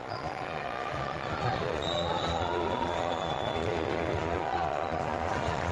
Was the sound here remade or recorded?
remade